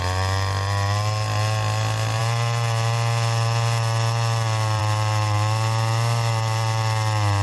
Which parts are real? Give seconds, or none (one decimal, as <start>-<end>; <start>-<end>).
0.0-7.4